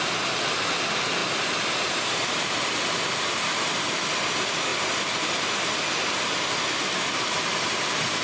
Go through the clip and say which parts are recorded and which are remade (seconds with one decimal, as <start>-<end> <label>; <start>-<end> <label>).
0.0-4.7 recorded; 4.7-6.4 remade; 6.4-8.2 recorded